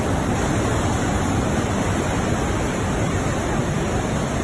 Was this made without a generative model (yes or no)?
yes